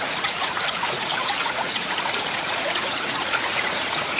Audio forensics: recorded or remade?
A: remade